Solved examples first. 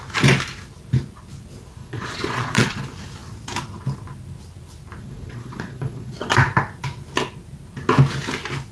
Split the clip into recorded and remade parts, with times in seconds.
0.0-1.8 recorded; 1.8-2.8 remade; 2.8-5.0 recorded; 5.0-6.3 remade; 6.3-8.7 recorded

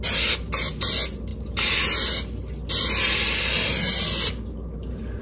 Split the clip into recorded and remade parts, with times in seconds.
0.0-5.2 recorded

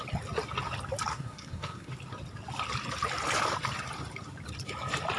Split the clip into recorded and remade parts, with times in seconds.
0.0-1.1 recorded; 1.1-1.9 remade; 1.9-5.2 recorded

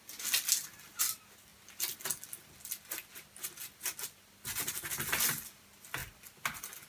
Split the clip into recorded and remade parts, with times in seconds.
0.0-6.9 recorded

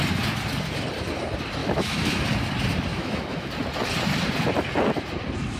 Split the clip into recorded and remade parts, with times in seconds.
0.0-1.6 recorded; 1.6-2.2 remade; 2.2-2.9 recorded; 2.9-3.5 remade; 3.5-5.6 recorded